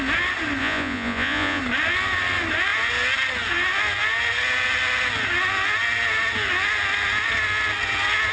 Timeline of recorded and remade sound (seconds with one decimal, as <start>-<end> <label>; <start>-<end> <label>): 0.0-0.6 recorded; 0.6-1.6 remade; 1.6-8.3 recorded